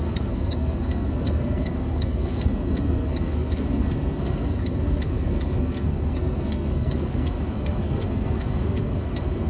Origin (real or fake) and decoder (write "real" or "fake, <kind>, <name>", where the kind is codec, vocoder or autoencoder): fake, codec, SNAC